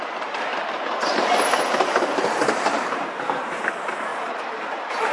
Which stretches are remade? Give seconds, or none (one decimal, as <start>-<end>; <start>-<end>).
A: 0.5-3.1; 4.1-5.1